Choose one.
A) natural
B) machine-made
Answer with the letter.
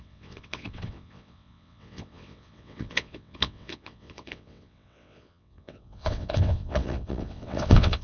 B